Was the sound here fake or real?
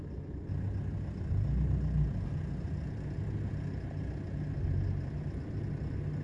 real